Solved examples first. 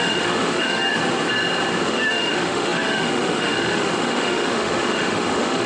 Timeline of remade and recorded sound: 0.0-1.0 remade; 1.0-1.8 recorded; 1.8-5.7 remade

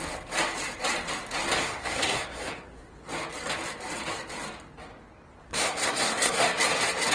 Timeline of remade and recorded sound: 0.0-1.6 recorded; 1.6-2.9 remade; 2.9-5.4 recorded; 5.4-6.4 remade; 6.4-7.1 recorded

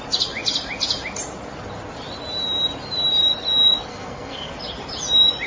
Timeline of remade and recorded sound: 0.0-3.9 recorded; 3.9-4.5 remade; 4.5-5.5 recorded

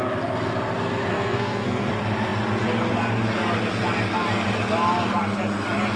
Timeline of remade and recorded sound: 0.0-1.1 recorded; 1.1-1.9 remade; 1.9-6.0 recorded

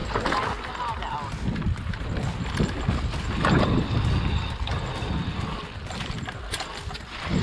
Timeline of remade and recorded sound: 0.0-7.4 recorded

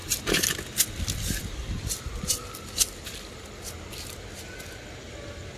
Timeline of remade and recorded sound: 0.0-5.6 recorded